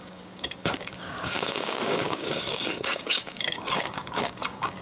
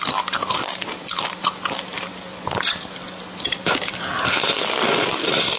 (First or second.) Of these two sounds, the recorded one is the second